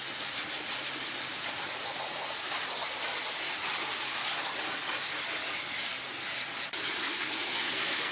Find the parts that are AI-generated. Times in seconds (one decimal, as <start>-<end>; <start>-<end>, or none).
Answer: 7.0-8.1